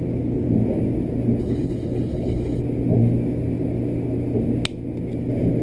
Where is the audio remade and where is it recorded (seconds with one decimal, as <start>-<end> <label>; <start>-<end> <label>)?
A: 0.0-1.4 recorded; 1.4-2.6 remade; 2.6-5.6 recorded